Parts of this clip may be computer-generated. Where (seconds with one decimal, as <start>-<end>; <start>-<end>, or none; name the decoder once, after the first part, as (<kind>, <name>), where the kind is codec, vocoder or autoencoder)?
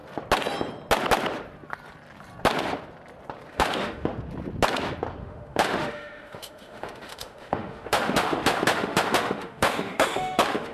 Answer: 3.5-4.1 (autoencoder, DAC-VAE); 5.2-10.7